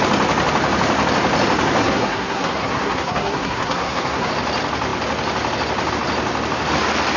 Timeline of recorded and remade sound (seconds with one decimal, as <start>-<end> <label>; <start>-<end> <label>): 0.0-1.8 recorded; 1.8-4.3 remade; 4.3-7.2 recorded